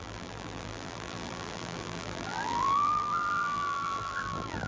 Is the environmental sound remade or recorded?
remade